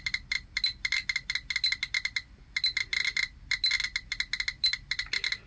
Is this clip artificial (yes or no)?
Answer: no